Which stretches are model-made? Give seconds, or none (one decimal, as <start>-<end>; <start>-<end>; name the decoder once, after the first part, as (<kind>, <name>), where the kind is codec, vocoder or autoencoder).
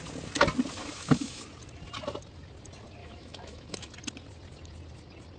0.8-1.4 (autoencoder, DAC-VAE); 3.0-3.9